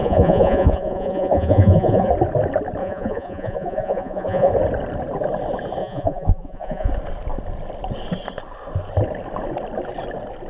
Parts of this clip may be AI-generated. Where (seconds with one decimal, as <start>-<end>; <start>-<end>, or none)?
0.0-2.1; 2.8-4.5; 5.8-6.9